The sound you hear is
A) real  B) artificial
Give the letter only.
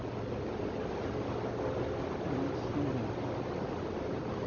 A